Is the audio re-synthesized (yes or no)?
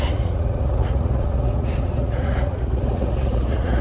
yes